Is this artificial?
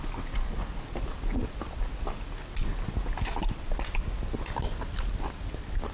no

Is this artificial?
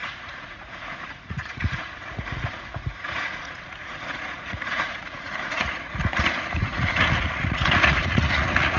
yes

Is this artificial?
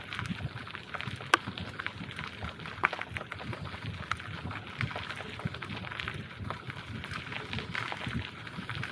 no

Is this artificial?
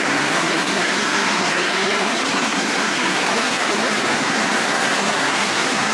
yes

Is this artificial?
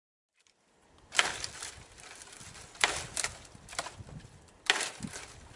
no